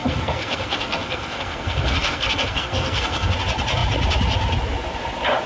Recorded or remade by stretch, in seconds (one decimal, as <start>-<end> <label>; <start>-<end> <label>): 0.0-3.3 remade; 3.3-5.5 recorded